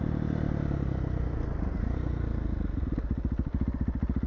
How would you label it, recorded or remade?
recorded